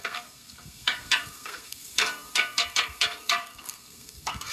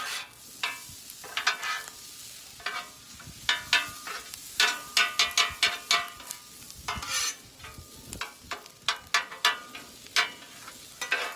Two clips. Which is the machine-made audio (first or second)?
first